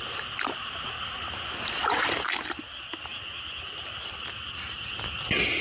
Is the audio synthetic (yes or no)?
no